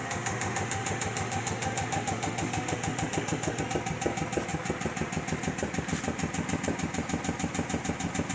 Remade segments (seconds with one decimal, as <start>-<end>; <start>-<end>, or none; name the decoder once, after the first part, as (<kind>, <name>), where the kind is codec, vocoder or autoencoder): 0.0-3.6 (autoencoder, DAC-VAE)